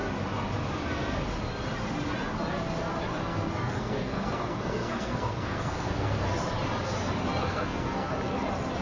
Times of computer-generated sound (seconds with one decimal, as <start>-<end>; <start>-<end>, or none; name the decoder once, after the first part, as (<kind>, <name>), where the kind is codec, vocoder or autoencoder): 3.2-6.2 (codec, SNAC); 7.4-8.1